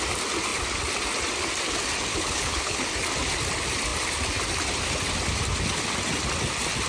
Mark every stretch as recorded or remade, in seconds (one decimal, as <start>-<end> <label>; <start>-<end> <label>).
0.0-2.1 recorded; 2.1-2.9 remade; 2.9-6.9 recorded